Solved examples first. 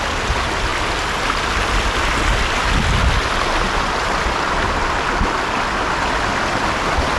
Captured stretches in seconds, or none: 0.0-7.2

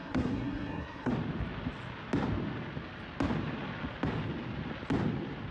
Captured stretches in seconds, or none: 1.1-5.5